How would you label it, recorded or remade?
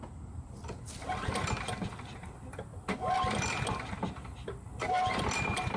recorded